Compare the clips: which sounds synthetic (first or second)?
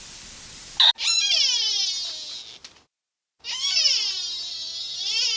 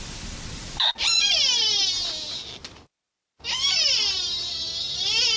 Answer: second